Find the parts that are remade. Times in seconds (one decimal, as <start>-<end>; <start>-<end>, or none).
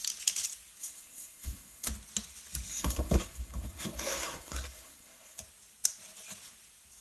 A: 0.8-1.9; 2.7-5.4